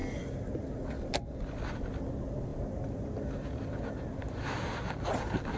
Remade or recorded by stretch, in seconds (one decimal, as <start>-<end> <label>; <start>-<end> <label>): 0.0-5.6 recorded